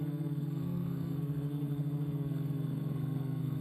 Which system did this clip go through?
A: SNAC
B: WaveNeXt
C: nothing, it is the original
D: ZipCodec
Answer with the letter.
A